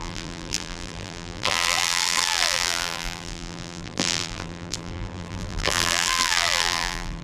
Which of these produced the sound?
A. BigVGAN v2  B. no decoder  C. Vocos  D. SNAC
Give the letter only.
A